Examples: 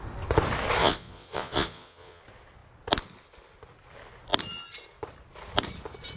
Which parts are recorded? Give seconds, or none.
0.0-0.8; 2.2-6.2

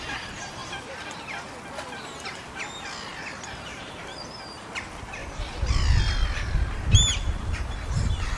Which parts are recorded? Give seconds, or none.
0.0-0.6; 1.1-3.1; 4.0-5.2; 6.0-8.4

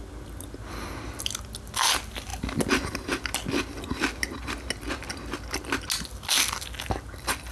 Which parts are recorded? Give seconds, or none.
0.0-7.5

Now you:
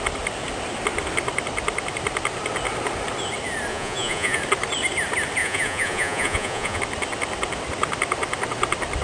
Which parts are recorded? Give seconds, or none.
0.0-3.7; 4.4-5.4; 6.8-9.0

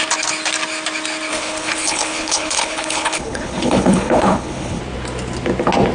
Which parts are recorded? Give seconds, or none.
0.0-1.3; 4.8-5.9

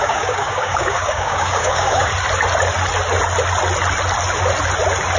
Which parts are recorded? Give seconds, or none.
2.1-5.2